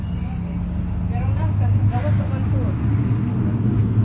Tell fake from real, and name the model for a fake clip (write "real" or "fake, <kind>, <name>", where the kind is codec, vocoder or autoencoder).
real